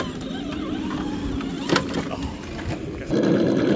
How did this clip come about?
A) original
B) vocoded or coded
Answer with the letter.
A